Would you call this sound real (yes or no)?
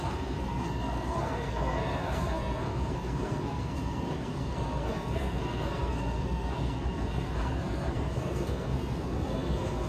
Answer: no